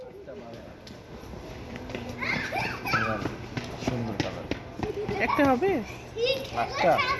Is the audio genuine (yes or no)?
yes